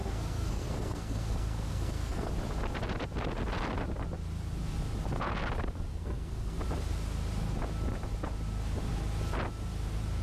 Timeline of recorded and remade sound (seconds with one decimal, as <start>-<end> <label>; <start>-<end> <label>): 0.0-2.3 remade; 2.3-5.9 recorded; 5.9-6.6 remade; 6.6-10.2 recorded